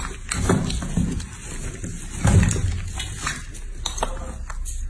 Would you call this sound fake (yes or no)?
no